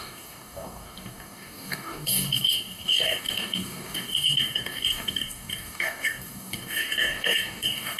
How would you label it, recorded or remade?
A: remade